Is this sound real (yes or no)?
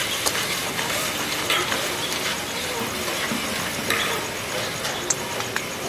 yes